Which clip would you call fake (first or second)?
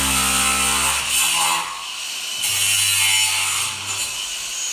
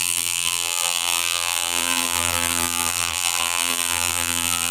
second